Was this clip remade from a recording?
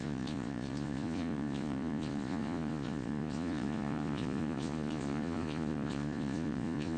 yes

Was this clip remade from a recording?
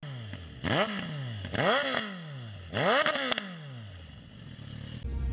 no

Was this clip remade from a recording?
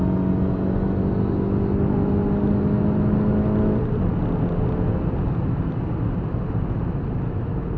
no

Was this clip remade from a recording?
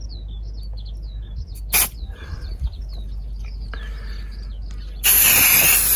no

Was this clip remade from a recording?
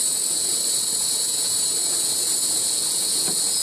yes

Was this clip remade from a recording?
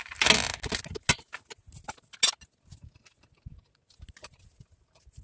no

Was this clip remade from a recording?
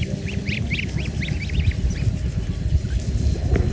no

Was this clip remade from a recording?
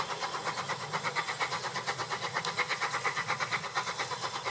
no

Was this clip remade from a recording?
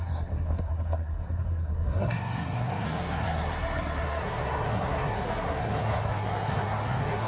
yes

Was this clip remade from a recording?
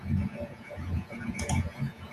yes